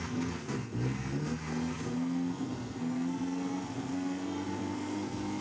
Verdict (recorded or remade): remade